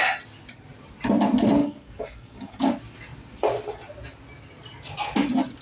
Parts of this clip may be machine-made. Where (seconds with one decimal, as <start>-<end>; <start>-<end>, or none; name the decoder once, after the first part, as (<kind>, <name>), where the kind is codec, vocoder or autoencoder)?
1.6-2.6 (codec, DAC)